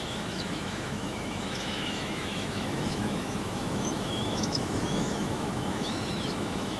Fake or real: fake